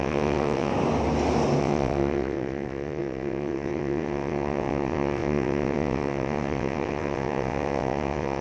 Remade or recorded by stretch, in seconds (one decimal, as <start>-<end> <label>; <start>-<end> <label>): 0.0-0.7 remade; 0.7-1.6 recorded; 1.6-8.4 remade